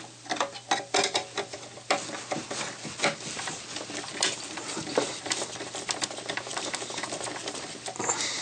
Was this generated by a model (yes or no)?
no